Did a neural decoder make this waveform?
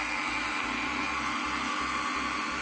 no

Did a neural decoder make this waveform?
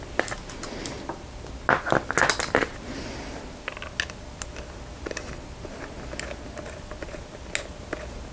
no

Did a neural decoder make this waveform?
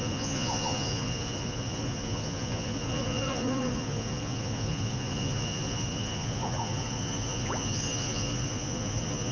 yes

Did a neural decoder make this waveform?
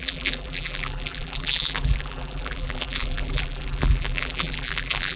yes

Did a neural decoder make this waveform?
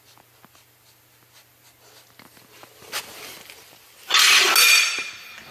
no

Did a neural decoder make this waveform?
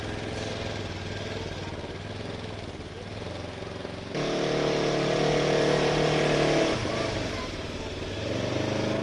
no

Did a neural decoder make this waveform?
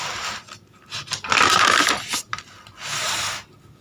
no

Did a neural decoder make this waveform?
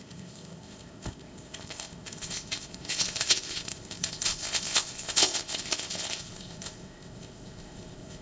yes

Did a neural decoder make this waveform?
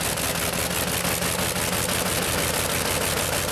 no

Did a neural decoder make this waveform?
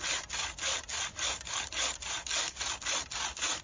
no